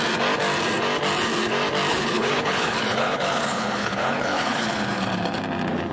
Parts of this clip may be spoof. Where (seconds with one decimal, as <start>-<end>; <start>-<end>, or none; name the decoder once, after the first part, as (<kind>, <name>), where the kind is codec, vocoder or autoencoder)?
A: 1.9-5.4 (codec, HILCodec)